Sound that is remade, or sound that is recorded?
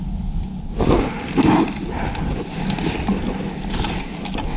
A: recorded